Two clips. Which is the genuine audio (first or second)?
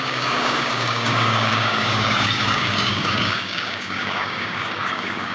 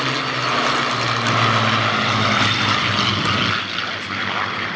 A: second